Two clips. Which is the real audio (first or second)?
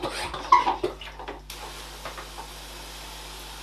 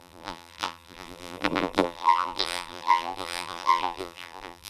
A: first